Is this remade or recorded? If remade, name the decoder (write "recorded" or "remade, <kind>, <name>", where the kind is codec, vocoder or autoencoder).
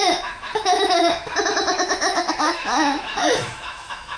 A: remade, autoencoder, DAC-VAE